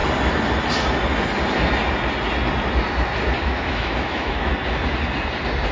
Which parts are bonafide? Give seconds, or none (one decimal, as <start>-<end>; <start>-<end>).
0.0-3.4; 4.5-5.7

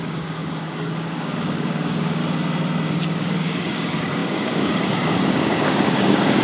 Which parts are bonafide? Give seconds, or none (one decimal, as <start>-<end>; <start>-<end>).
2.2-2.9